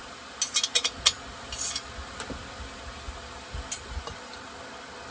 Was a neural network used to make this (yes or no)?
no